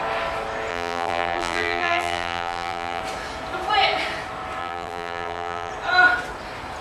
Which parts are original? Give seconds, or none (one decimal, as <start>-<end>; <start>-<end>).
0.0-0.7; 3.0-4.6; 5.7-6.8